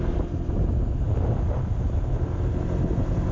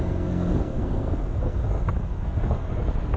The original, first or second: first